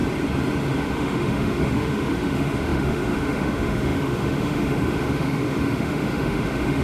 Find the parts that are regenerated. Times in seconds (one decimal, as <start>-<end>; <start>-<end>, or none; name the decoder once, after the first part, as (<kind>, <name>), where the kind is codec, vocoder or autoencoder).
0.8-6.8 (autoencoder, DAC-VAE)